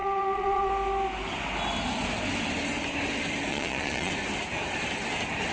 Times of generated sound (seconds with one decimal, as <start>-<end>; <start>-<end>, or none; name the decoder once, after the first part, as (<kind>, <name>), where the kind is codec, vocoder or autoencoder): 0.0-0.7 (vocoder, Vocos); 3.5-4.1